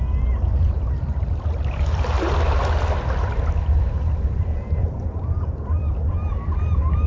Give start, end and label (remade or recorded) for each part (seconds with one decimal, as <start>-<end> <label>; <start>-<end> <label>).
0.0-7.1 recorded